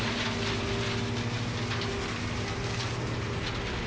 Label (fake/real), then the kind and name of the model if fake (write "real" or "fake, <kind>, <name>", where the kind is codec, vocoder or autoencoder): real